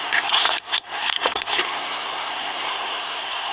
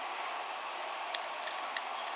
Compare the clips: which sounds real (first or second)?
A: second